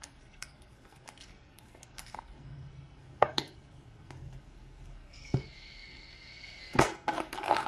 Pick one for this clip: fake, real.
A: fake